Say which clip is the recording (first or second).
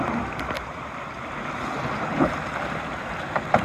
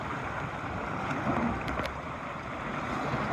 first